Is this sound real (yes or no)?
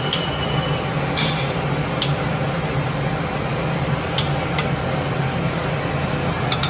yes